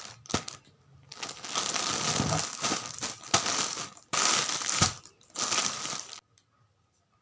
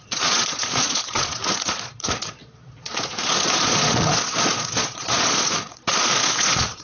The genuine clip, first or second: first